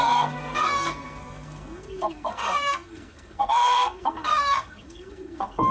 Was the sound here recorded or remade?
remade